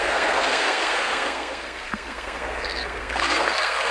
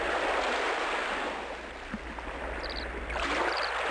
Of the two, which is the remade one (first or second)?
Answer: first